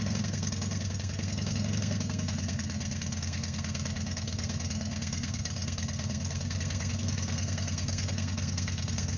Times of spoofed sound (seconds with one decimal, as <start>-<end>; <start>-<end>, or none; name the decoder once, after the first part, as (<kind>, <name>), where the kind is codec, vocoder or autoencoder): 0.0-9.2 (codec, SNAC)